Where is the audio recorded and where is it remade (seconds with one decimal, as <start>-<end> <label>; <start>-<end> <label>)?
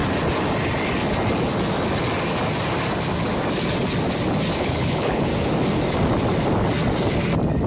0.0-4.6 recorded; 4.6-5.3 remade; 5.3-7.7 recorded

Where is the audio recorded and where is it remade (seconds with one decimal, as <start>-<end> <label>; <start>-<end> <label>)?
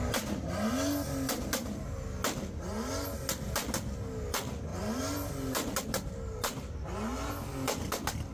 0.0-4.7 recorded; 4.7-5.3 remade; 5.3-8.3 recorded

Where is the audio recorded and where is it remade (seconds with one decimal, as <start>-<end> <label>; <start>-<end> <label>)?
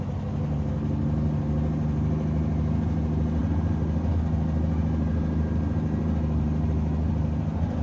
0.0-7.8 recorded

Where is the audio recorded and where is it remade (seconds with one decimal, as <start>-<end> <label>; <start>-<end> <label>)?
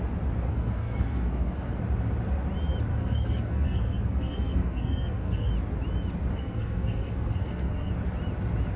0.0-0.5 recorded; 0.5-1.8 remade; 1.8-2.9 recorded; 2.9-5.5 remade; 5.5-6.3 recorded; 6.3-7.9 remade; 7.9-8.8 recorded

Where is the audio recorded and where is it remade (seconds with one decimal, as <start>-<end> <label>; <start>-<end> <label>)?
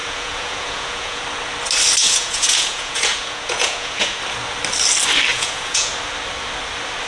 0.0-1.2 remade; 1.2-2.0 recorded; 2.0-4.2 remade; 4.2-5.3 recorded; 5.3-5.9 remade; 5.9-7.1 recorded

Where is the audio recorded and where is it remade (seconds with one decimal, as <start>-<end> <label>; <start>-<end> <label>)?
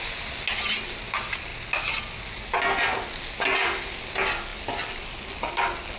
0.0-6.0 recorded